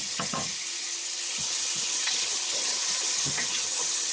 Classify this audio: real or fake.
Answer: fake